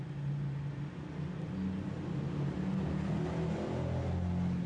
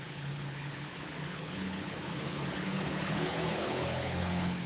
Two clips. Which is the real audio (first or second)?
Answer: first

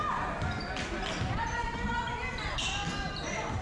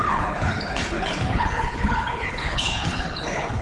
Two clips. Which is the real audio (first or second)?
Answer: first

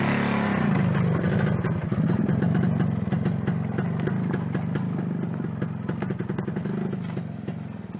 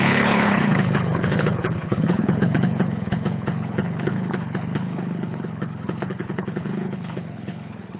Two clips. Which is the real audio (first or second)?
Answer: first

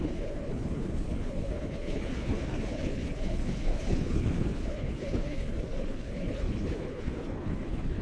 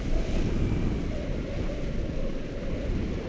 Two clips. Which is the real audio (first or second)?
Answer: second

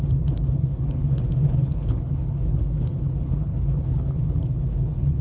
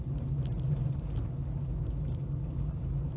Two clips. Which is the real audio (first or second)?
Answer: second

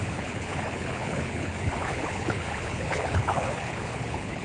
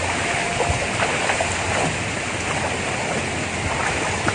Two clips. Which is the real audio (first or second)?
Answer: second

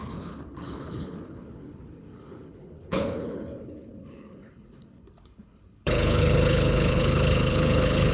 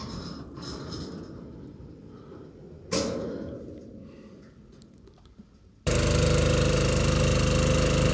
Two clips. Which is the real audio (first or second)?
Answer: second